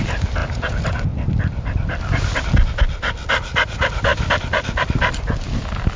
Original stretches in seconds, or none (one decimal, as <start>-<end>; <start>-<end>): 0.0-6.0